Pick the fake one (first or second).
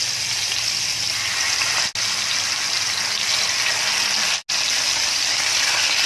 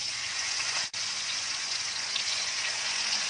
second